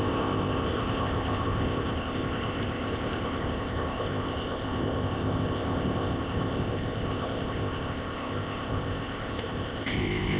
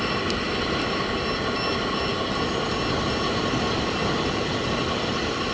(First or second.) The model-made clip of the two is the first